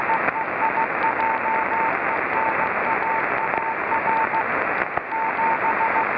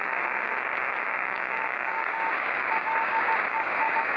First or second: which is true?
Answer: first